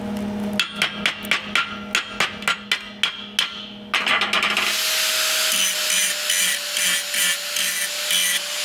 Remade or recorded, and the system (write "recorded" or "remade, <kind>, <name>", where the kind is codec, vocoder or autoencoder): recorded